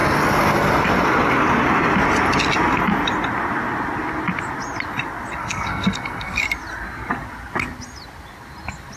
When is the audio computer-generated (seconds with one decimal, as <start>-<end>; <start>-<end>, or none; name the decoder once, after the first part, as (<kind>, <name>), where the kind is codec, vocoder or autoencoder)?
5.4-6.4 (codec, SNAC)